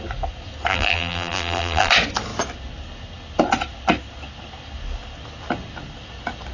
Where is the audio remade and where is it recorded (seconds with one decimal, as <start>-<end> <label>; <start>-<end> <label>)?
0.0-0.7 recorded; 0.7-1.9 remade; 1.9-6.5 recorded